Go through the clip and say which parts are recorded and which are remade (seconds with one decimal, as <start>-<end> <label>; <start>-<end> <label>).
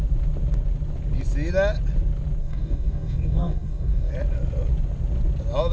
0.0-2.4 recorded; 2.4-4.1 remade; 4.1-5.7 recorded